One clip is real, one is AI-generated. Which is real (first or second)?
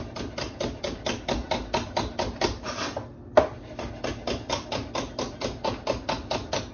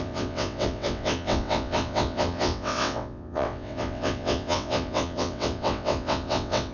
first